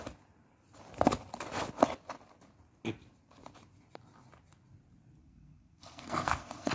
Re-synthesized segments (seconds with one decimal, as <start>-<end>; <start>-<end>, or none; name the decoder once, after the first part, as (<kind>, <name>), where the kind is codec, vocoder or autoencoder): 5.2-6.7 (codec, SNAC)